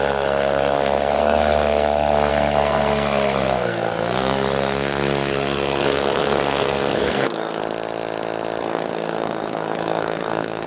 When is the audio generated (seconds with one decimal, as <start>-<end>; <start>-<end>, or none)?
0.0-7.6; 8.6-10.7

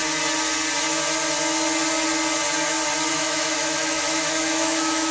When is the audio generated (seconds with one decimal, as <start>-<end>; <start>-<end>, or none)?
3.1-5.1

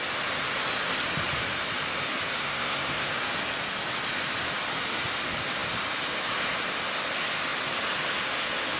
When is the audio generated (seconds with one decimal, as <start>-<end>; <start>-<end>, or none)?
2.4-3.1

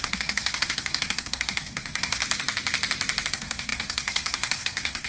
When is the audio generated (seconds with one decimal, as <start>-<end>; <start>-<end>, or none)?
0.0-2.2; 3.3-5.1

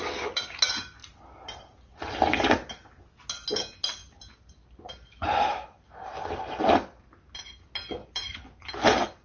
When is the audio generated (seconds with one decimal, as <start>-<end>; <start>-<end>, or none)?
none

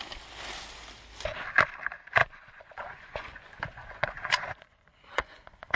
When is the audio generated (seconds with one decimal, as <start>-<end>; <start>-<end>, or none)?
2.2-5.8